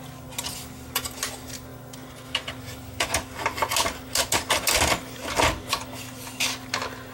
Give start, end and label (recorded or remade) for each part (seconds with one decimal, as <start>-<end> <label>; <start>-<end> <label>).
0.0-7.1 recorded